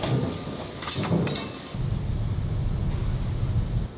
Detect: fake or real real